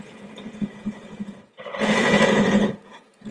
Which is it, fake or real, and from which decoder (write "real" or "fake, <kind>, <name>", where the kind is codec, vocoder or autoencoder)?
fake, vocoder, Vocos